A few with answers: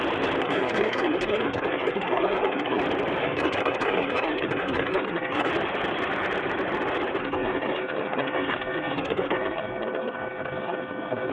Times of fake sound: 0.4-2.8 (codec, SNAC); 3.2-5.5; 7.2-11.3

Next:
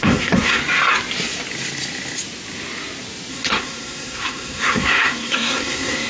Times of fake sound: 0.0-0.6 (codec, SNAC); 3.3-6.1